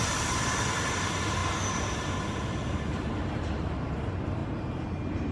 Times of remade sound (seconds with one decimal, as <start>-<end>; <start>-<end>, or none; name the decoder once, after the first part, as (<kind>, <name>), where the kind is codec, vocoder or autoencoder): none